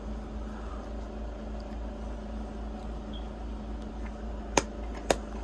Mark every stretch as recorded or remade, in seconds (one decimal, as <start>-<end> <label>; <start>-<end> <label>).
0.0-5.4 recorded